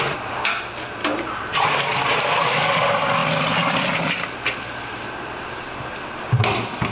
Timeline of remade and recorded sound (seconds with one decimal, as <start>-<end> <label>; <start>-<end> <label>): 0.0-1.0 recorded; 1.0-1.7 remade; 1.7-6.9 recorded